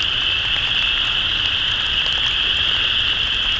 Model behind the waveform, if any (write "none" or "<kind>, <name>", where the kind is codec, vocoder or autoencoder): none